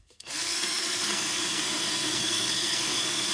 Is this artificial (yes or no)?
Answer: yes